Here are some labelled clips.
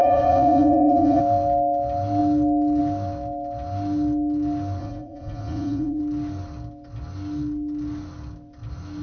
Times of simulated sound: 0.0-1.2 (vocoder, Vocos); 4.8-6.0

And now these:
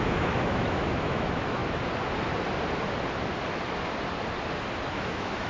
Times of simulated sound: 0.0-1.6 (autoencoder, DAC-VAE); 4.9-5.5